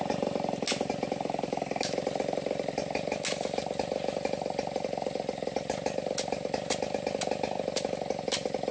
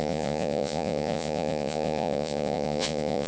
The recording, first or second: first